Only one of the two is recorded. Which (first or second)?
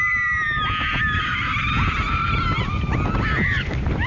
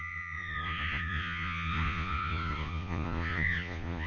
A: first